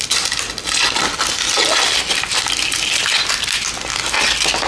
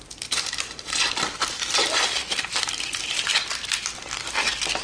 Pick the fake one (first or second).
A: second